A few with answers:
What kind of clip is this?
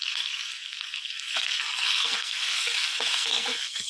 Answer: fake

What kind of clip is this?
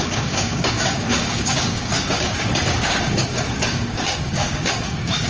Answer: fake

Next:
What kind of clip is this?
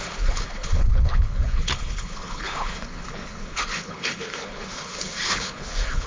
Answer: fake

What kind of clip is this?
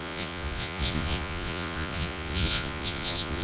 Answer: fake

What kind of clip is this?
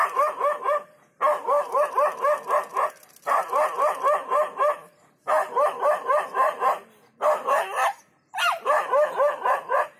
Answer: real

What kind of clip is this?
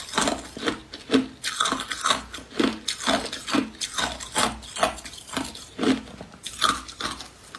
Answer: real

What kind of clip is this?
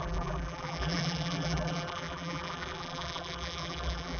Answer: fake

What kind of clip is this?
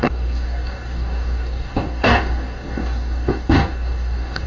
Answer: fake